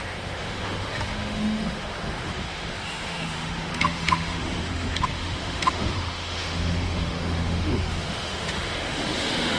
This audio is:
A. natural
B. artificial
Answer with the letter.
B